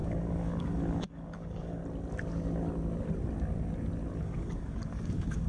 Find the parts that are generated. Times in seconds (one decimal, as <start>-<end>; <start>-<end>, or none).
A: 0.0-1.8; 4.2-5.5